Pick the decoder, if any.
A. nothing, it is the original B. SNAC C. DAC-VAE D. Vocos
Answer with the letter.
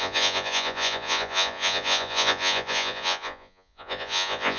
D